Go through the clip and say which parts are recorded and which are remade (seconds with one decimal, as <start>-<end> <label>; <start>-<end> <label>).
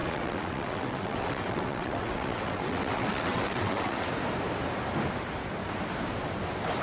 0.0-4.1 remade; 4.1-6.8 recorded